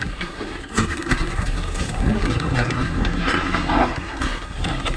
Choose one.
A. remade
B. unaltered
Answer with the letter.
A